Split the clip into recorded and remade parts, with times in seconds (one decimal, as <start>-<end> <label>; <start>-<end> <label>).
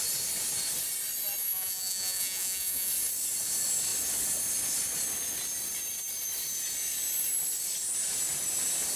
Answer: 0.0-1.4 recorded; 1.4-2.9 remade; 2.9-9.0 recorded